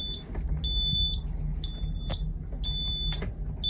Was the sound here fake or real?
real